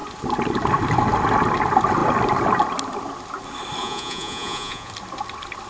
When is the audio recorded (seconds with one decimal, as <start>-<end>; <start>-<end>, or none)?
0.0-3.8; 4.9-5.7